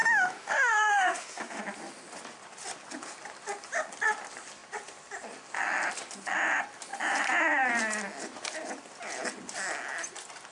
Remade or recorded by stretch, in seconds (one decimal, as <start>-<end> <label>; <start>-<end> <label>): 0.0-1.6 remade; 1.6-10.5 recorded